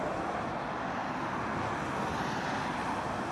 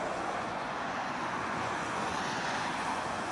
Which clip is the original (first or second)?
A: first